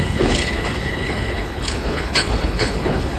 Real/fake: fake